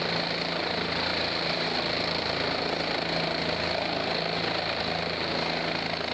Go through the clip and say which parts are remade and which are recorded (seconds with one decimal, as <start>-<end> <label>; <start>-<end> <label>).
0.0-6.1 recorded